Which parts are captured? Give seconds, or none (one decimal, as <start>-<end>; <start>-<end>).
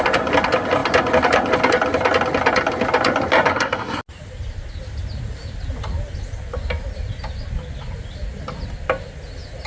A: 0.0-3.5; 4.0-9.7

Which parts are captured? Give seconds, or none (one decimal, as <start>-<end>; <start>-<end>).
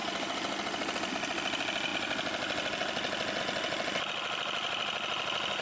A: 1.1-5.6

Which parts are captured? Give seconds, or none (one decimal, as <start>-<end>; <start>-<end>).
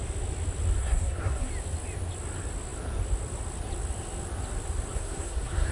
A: 0.0-0.8; 1.5-4.9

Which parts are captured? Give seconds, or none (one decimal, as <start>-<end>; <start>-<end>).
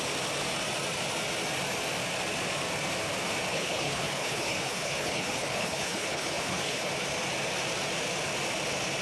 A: 0.0-3.5; 6.9-9.0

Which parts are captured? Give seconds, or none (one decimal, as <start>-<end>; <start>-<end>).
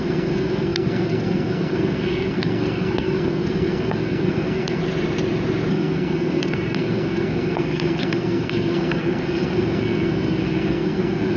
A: 4.8-5.7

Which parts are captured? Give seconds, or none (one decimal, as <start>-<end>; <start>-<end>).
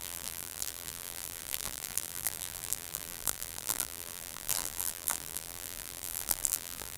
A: none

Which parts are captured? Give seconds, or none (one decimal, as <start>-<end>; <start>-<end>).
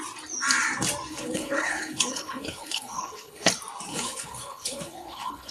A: 0.0-1.1; 3.5-3.9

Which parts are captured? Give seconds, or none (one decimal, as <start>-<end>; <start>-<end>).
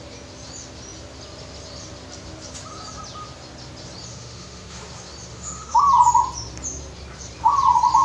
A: 0.0-4.1; 4.8-5.3; 5.8-8.0